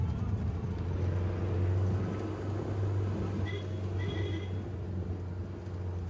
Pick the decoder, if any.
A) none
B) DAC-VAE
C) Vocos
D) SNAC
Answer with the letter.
A